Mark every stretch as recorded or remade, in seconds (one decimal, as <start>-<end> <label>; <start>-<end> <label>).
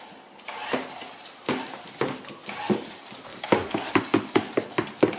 0.0-3.3 recorded; 3.3-4.0 remade; 4.0-5.2 recorded